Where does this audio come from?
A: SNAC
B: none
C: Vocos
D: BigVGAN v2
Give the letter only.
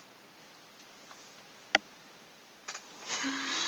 B